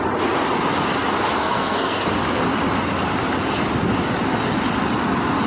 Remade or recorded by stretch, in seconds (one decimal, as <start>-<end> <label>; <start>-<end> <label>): 0.0-1.4 recorded; 1.4-2.0 remade; 2.0-5.5 recorded

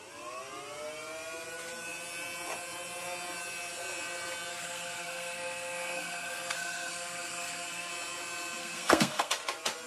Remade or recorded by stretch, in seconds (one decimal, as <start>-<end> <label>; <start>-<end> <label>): 0.0-4.5 recorded; 4.5-7.9 remade; 7.9-8.6 recorded; 8.6-9.3 remade; 9.3-9.9 recorded

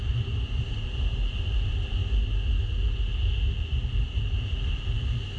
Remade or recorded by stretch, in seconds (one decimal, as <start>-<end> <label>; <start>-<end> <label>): 0.0-5.4 recorded

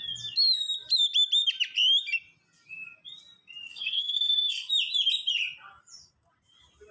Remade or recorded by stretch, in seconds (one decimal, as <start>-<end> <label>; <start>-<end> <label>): 0.0-3.7 recorded; 3.7-4.7 remade; 4.7-6.9 recorded

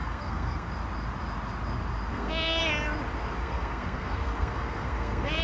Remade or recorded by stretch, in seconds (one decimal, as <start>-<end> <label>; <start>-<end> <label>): 0.0-0.7 remade; 0.7-2.1 recorded; 2.1-2.6 remade; 2.6-3.4 recorded; 3.4-5.4 remade